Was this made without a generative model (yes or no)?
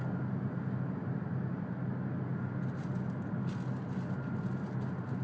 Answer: yes